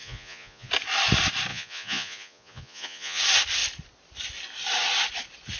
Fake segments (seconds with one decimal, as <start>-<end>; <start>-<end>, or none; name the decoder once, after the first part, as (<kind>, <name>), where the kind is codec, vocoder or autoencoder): 0.0-0.7 (vocoder, Vocos); 1.5-3.2